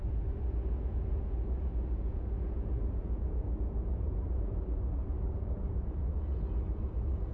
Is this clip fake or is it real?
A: fake